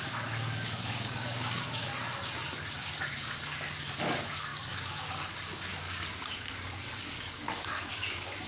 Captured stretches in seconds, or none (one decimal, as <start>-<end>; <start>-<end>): 1.8-3.0